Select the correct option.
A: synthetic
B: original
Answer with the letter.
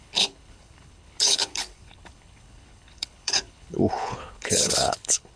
A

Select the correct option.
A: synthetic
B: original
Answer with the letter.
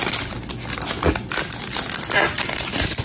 B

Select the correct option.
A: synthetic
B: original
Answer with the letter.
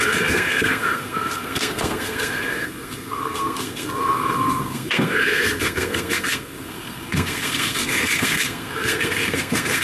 A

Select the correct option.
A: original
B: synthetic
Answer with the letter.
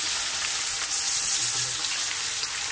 A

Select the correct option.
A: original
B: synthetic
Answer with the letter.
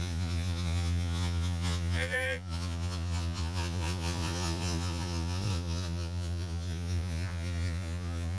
B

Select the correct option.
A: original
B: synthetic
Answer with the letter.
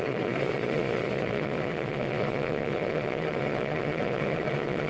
B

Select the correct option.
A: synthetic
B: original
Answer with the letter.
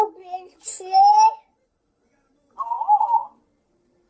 B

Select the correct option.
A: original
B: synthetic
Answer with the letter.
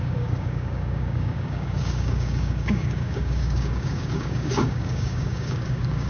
B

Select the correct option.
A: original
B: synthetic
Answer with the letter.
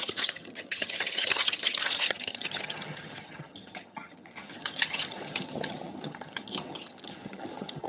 B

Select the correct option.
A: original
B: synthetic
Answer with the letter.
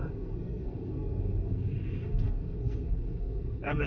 B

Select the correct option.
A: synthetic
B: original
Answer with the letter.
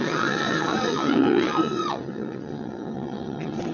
A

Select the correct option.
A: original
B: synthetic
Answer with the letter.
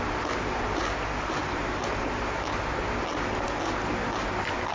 A